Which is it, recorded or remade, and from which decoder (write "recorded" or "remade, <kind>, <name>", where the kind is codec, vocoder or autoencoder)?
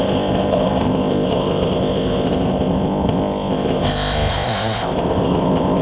remade, codec, ZipCodec